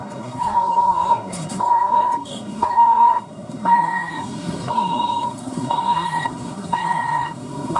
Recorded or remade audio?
remade